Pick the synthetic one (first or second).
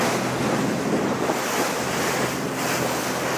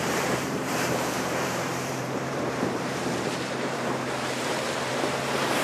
second